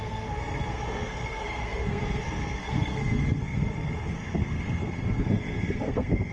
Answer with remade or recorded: remade